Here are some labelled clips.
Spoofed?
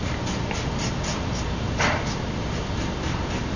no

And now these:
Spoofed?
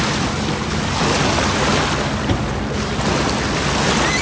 no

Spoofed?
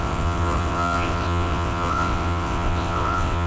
yes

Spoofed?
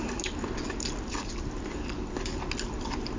no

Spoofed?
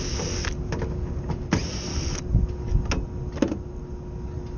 no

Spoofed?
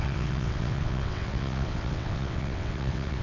yes